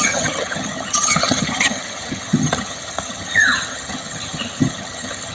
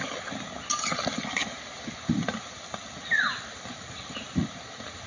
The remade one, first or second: first